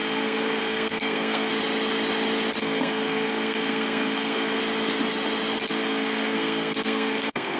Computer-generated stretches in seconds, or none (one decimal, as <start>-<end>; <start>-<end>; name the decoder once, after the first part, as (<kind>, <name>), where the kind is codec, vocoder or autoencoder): 0.0-1.5 (codec, SNAC); 2.6-4.6; 5.7-7.6